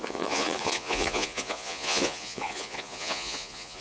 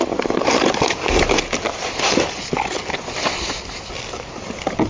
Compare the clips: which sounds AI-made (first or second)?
first